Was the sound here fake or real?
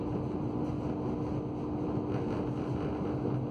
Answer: real